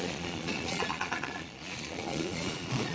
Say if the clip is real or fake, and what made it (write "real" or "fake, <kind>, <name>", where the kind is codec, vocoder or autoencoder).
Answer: fake, vocoder, Vocos